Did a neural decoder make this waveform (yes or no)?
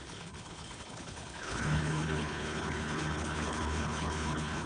yes